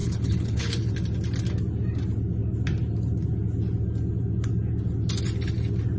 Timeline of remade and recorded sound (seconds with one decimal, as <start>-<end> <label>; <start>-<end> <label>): 0.0-0.9 remade; 0.9-6.0 recorded